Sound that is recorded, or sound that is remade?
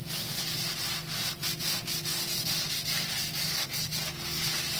recorded